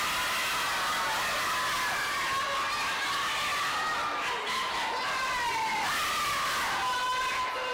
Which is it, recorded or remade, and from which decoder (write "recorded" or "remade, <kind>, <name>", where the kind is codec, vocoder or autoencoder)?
recorded